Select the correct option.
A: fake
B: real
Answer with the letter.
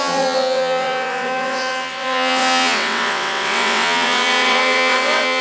A